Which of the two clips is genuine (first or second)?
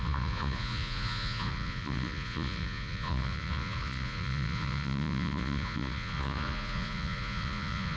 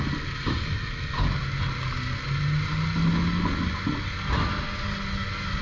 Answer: second